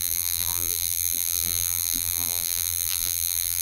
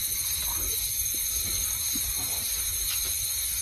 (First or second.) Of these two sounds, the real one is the second